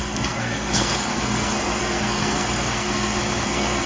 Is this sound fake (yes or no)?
yes